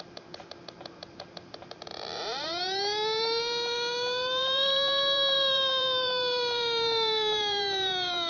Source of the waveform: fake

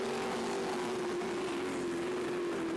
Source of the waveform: real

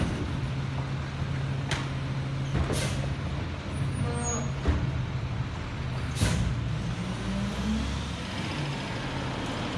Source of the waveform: real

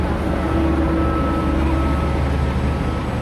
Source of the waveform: real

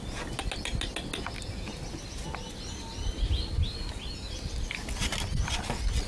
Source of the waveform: real